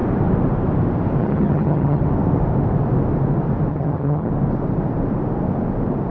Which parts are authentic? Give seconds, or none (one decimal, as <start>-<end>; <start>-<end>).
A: 0.0-1.2; 2.0-3.7; 4.3-6.1